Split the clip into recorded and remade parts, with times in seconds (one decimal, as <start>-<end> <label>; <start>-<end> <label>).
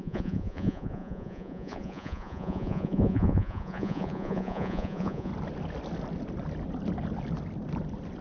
0.0-5.3 remade; 5.3-8.2 recorded